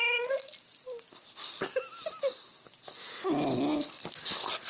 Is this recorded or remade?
recorded